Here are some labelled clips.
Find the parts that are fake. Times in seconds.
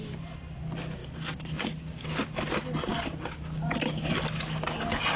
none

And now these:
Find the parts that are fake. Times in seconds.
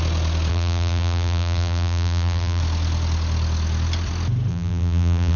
0.5-2.6 (vocoder, BigVGAN v2); 4.5-5.4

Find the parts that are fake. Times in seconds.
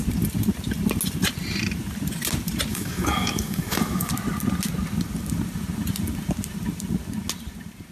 2.7-4.1 (codec, DAC)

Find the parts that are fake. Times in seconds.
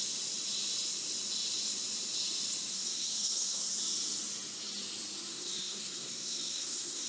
2.7-3.7 (codec, SNAC); 5.3-7.1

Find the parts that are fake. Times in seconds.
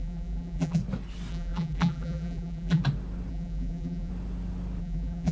0.0-0.8 (vocoder, BigVGAN v2); 1.3-2.8; 3.3-4.1; 4.8-5.3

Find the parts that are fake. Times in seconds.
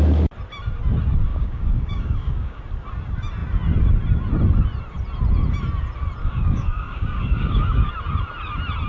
1.3-2.6 (codec, DAC); 6.2-7.9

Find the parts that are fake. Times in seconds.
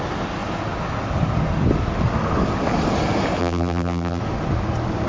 3.4-4.2 (vocoder, BigVGAN v2)